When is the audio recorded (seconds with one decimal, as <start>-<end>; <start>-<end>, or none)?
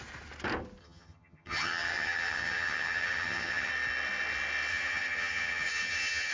0.0-0.8; 3.7-4.7